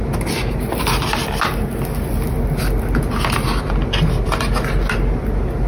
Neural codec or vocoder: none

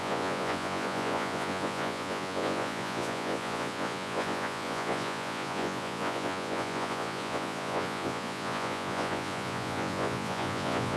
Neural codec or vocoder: vocoder, Vocos